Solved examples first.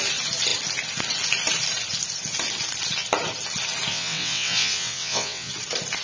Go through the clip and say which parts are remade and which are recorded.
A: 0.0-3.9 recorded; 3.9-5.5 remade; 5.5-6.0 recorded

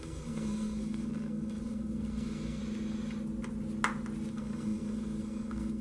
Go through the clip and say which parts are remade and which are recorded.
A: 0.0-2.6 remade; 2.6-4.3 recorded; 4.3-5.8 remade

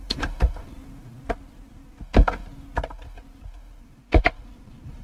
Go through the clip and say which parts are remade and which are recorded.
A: 0.0-0.8 remade; 0.8-3.8 recorded; 3.8-5.0 remade

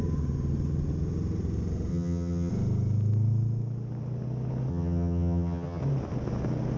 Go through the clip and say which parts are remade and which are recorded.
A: 0.0-1.9 recorded; 1.9-2.5 remade; 2.5-4.7 recorded; 4.7-5.8 remade; 5.8-6.8 recorded

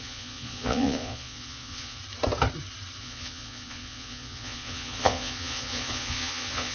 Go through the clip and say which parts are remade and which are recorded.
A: 0.0-2.0 remade; 2.0-3.0 recorded; 3.0-6.7 remade